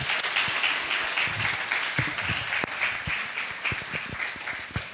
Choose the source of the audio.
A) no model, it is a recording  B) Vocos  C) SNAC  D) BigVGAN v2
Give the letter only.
A